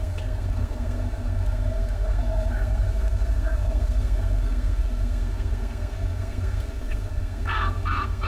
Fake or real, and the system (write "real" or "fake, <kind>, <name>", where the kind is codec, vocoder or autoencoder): fake, codec, SNAC